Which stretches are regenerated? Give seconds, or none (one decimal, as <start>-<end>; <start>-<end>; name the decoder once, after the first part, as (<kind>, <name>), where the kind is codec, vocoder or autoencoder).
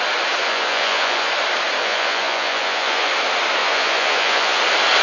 0.4-1.3 (vocoder, Vocos); 1.8-3.1; 3.6-4.6